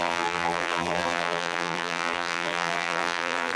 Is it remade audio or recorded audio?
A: remade